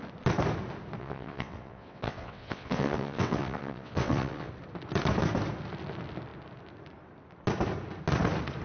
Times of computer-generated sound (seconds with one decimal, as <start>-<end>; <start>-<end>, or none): 1.0-4.5